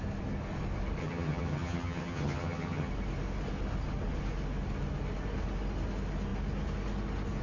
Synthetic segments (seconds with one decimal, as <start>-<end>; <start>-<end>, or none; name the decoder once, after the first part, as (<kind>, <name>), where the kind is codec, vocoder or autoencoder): 1.0-2.9 (vocoder, HiFi-GAN)